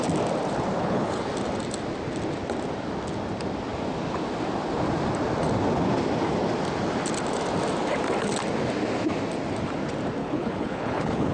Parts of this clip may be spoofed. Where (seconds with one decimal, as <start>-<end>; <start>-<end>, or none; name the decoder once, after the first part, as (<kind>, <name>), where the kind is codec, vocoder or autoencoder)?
0.8-1.3 (codec, HILCodec); 10.2-11.3